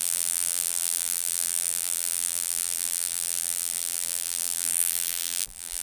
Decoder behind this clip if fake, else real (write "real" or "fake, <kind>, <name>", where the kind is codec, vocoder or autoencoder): fake, vocoder, BigVGAN v2